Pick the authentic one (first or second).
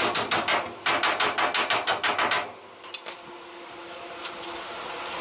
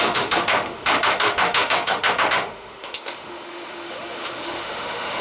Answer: first